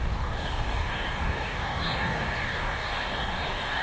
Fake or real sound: fake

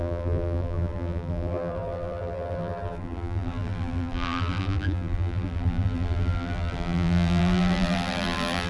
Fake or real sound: fake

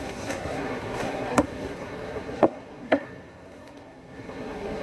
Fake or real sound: fake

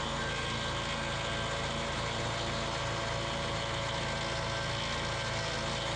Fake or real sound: real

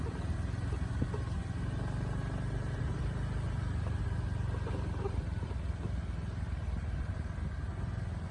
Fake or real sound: real